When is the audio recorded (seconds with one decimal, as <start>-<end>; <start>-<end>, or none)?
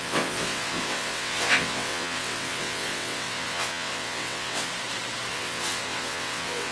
4.7-5.3